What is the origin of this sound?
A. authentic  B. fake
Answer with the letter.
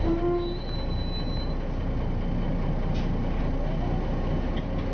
A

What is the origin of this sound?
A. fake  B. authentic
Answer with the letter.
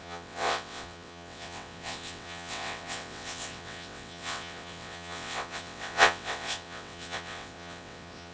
A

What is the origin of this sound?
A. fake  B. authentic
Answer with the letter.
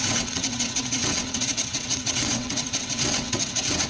A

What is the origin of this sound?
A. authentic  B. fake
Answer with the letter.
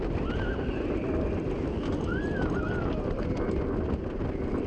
A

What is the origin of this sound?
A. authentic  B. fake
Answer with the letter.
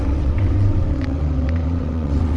B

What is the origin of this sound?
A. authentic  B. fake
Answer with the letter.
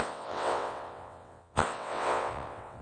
B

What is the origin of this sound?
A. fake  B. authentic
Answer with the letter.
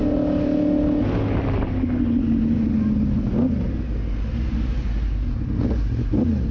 B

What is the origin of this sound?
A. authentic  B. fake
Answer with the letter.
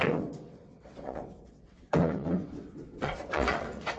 B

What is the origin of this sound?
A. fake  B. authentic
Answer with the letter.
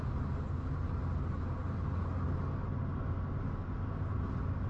B